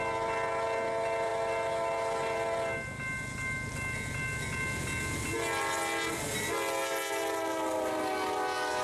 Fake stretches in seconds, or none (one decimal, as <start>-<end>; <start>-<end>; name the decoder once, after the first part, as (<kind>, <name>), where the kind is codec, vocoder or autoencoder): none